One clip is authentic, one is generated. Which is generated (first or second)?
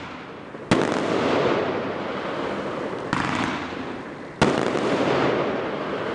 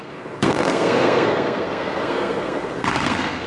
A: second